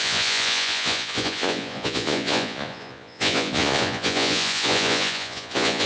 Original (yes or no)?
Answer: no